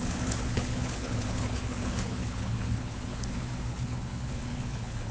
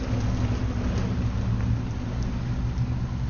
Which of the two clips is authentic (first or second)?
second